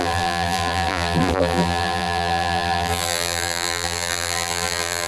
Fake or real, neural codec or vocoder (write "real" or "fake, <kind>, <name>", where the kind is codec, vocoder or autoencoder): fake, vocoder, BigVGAN v2